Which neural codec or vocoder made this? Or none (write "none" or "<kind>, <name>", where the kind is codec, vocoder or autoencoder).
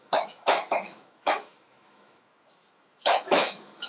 autoencoder, DAC-VAE